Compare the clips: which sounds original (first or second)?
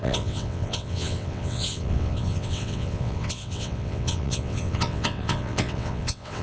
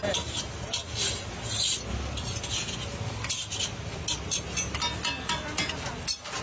second